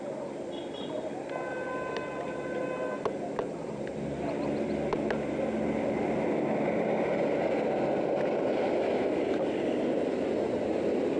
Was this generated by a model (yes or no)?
no